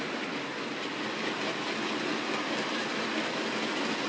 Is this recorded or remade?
recorded